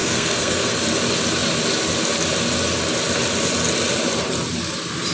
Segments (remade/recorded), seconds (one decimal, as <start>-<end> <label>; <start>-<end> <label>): 0.0-0.7 remade; 0.7-5.1 recorded